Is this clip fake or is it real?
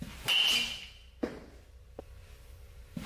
real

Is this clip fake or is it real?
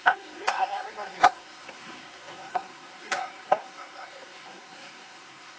fake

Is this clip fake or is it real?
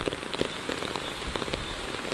real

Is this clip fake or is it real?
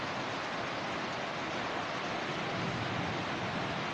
real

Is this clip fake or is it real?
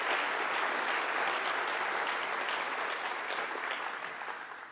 real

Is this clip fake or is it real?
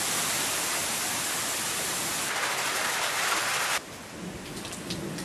real